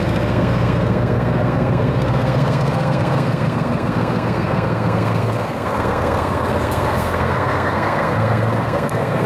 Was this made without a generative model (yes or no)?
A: no